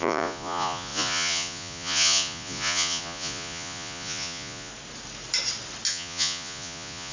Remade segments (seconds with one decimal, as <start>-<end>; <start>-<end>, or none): 0.0-4.7; 5.9-7.1